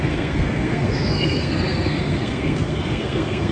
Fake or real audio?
fake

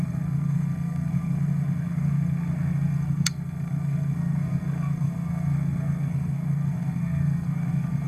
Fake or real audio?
fake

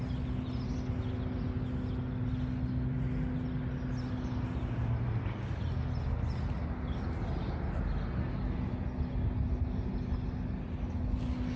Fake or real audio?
real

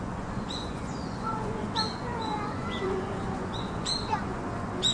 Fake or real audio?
fake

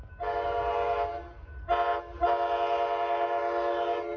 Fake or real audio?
real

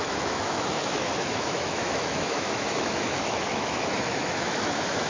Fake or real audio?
fake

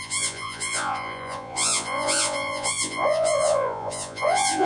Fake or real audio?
fake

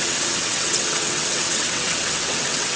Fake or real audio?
fake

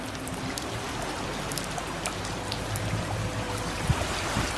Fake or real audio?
real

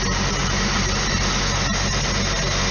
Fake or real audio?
real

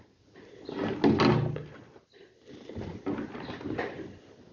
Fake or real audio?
real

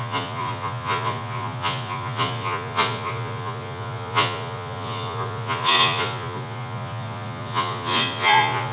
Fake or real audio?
fake